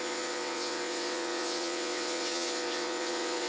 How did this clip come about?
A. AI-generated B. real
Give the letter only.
A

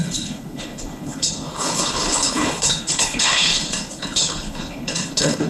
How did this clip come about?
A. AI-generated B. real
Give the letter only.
A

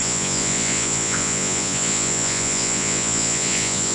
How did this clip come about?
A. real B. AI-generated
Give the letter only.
B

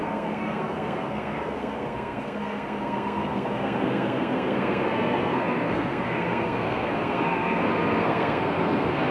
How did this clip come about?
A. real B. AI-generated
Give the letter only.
B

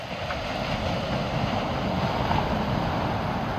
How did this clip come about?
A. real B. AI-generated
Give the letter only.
A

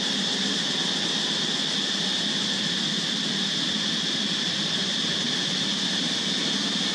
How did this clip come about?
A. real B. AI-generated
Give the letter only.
A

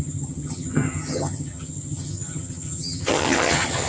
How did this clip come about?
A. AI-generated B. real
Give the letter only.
A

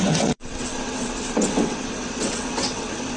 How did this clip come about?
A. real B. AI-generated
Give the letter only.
B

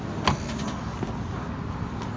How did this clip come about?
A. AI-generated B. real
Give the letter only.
B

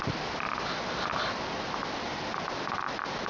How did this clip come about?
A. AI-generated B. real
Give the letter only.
B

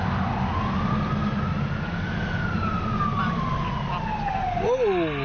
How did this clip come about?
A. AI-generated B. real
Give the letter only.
B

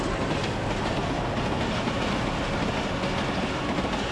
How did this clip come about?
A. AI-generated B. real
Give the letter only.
B